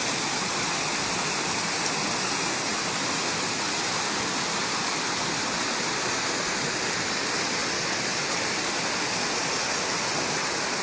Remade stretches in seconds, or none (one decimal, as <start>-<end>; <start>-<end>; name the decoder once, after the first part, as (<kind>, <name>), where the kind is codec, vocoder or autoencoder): none